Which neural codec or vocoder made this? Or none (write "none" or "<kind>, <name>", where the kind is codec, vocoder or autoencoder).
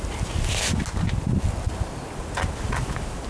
none